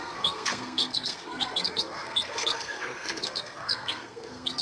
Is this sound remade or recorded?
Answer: remade